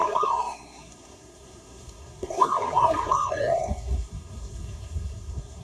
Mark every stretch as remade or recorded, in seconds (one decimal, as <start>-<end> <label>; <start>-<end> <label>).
0.0-5.6 remade

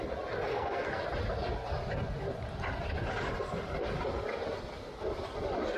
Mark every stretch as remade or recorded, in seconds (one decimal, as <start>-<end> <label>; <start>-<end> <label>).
0.0-0.5 recorded; 0.5-1.0 remade; 1.0-5.8 recorded

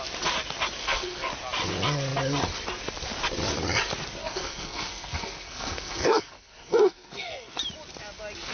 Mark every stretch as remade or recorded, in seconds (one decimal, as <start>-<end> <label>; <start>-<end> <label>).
0.0-0.8 recorded; 0.8-1.3 remade; 1.3-4.2 recorded; 4.2-7.6 remade; 7.6-8.5 recorded

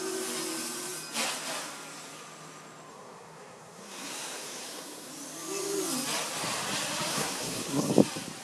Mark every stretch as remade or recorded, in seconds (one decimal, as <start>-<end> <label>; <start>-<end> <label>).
0.0-2.9 recorded; 2.9-5.1 remade; 5.1-7.1 recorded; 7.1-7.9 remade; 7.9-8.4 recorded

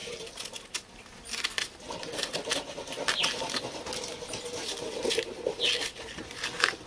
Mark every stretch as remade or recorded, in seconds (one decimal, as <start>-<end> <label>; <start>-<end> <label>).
0.0-6.9 recorded